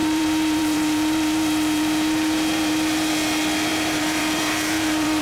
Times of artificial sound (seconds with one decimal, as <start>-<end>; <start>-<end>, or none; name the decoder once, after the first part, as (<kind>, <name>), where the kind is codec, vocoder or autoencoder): 0.0-3.1 (vocoder, BigVGAN v2); 3.7-5.2